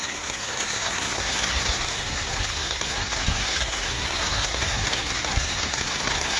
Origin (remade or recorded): remade